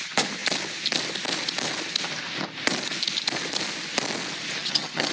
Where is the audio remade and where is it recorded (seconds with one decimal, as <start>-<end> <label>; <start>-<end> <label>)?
0.0-4.6 recorded; 4.6-5.1 remade